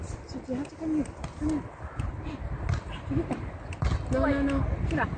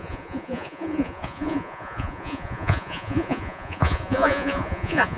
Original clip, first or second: first